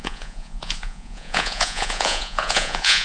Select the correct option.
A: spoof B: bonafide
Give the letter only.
A